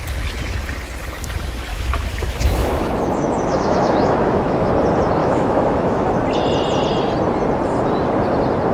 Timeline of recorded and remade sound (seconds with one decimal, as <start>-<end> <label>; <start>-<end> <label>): 0.0-1.7 recorded; 1.7-4.7 remade; 4.7-5.2 recorded; 5.2-6.1 remade; 6.1-8.7 recorded